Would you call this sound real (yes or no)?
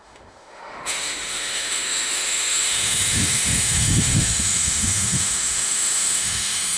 no